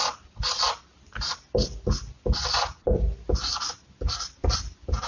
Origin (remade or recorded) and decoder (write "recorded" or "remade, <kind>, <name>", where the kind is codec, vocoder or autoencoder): recorded